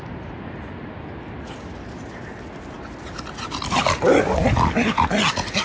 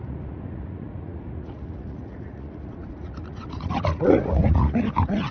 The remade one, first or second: second